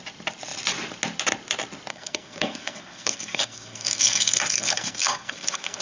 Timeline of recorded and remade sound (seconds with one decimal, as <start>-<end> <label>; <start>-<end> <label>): 0.0-1.9 recorded; 1.9-5.8 remade